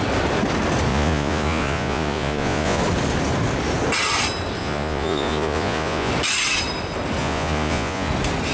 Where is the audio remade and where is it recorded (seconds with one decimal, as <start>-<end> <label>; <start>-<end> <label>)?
0.0-0.9 recorded; 0.9-2.8 remade; 2.8-4.6 recorded; 4.6-6.1 remade; 6.1-7.2 recorded; 7.2-8.1 remade; 8.1-8.5 recorded